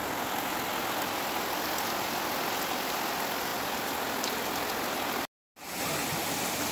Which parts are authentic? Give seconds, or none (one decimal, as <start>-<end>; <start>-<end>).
0.0-6.7